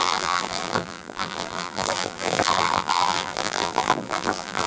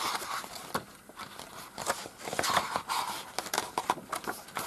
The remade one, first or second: first